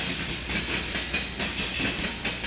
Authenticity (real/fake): real